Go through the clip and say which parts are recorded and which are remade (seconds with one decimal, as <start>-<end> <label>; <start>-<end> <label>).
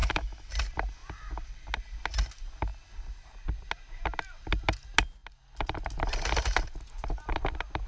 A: 0.0-0.5 remade; 0.5-7.9 recorded